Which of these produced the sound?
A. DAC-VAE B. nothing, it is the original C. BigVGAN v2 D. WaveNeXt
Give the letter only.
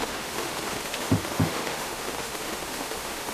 A